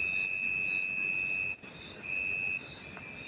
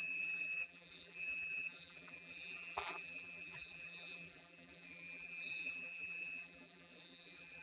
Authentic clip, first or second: first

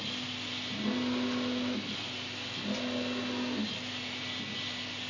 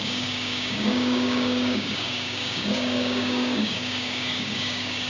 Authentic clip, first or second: first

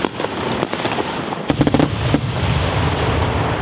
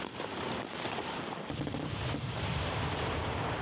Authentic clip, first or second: first